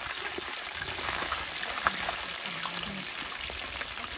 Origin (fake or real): real